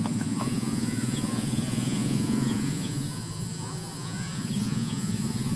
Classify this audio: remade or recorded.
remade